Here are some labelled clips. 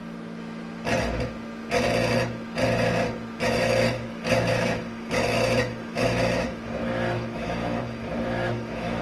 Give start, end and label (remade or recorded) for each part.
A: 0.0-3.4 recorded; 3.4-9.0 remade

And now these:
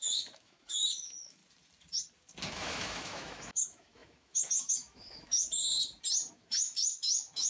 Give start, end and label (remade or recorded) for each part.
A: 0.0-1.4 remade; 1.4-2.5 recorded; 2.5-5.6 remade; 5.6-6.3 recorded; 6.3-7.5 remade

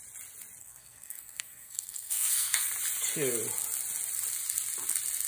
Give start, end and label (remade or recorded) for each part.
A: 0.0-0.6 recorded; 0.6-2.7 remade; 2.7-5.3 recorded

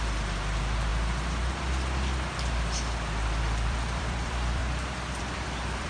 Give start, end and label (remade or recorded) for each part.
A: 0.0-0.9 remade; 0.9-3.4 recorded; 3.4-4.6 remade; 4.6-5.2 recorded; 5.2-5.9 remade